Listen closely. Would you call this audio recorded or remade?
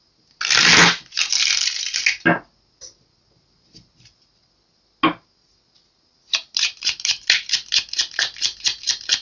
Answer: recorded